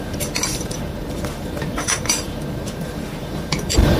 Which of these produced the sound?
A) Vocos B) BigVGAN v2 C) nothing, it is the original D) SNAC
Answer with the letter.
B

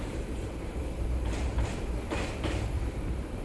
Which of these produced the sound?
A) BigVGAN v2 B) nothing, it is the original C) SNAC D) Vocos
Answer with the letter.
A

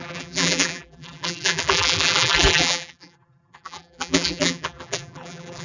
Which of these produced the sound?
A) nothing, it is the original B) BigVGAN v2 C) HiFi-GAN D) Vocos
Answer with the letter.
B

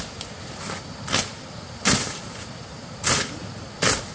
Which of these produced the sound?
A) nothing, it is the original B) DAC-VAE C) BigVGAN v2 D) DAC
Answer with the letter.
A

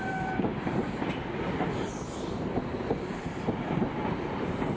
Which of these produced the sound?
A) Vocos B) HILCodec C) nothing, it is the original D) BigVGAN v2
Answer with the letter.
D